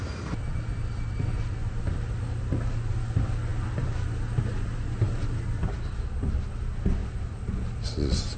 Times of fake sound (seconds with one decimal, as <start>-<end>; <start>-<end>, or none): none